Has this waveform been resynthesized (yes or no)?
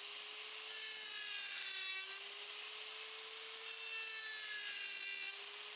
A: no